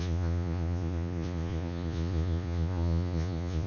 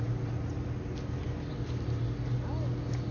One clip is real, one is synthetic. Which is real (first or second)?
second